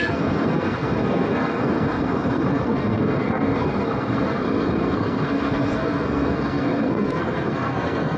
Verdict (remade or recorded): remade